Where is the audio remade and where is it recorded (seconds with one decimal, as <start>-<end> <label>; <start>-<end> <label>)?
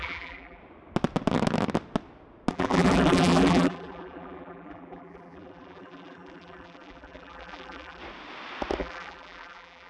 0.0-0.6 remade; 0.6-2.5 recorded; 2.5-8.0 remade; 8.0-8.8 recorded; 8.8-9.9 remade